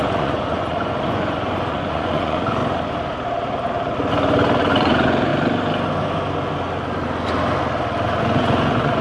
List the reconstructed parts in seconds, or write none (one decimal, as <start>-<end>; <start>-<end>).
0.0-2.6; 4.7-5.3; 8.2-9.0